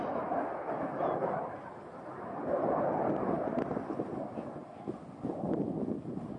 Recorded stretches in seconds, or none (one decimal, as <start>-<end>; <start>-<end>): 0.0-6.4